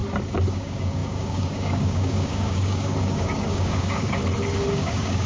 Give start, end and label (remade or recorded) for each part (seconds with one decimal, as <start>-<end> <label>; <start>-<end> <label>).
0.0-0.5 recorded; 0.5-4.2 remade; 4.2-4.7 recorded; 4.7-5.3 remade